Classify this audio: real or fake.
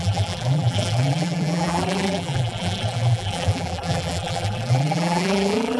fake